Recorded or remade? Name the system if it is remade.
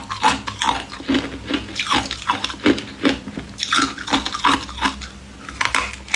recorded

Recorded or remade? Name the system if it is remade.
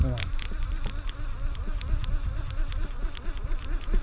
recorded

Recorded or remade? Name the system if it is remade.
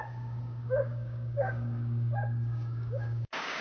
remade, codec, DAC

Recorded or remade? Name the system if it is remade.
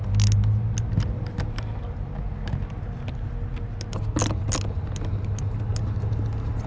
recorded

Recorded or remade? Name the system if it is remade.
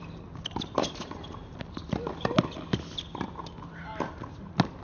recorded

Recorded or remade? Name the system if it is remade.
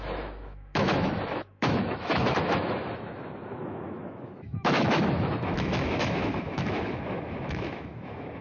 remade, autoencoder, DAC-VAE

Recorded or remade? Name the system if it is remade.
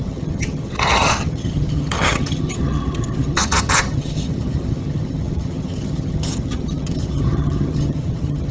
remade, vocoder, HiFi-GAN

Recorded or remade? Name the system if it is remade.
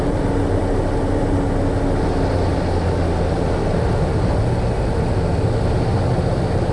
recorded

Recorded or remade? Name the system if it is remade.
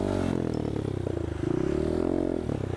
recorded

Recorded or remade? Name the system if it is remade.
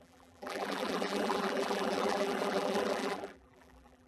remade, vocoder, BigVGAN v2